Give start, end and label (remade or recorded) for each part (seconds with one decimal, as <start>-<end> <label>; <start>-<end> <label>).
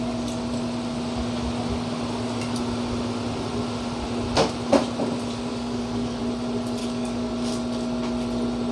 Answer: 0.0-5.5 recorded; 5.5-6.2 remade; 6.2-6.8 recorded; 6.8-7.3 remade; 7.3-8.7 recorded